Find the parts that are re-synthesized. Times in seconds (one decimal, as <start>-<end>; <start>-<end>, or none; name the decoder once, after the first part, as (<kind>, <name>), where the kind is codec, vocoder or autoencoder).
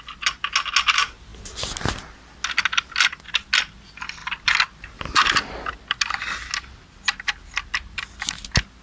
none